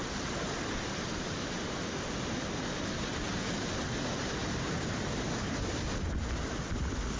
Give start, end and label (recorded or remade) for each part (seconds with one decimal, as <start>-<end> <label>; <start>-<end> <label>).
0.0-1.8 remade; 1.8-7.2 recorded